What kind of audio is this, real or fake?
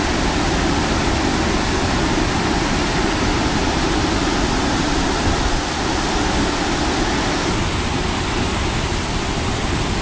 real